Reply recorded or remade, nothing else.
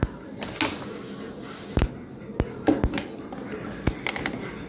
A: recorded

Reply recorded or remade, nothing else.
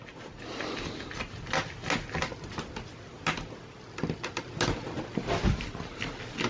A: recorded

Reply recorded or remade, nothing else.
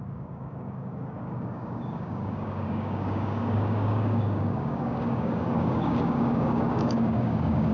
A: remade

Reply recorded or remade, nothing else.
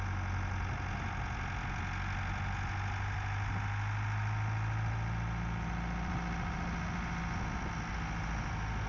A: recorded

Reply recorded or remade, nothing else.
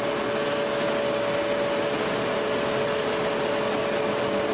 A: recorded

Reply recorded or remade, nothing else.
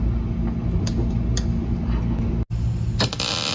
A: recorded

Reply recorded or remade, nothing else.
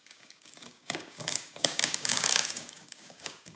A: remade